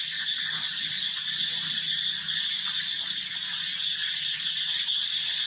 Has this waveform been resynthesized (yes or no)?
no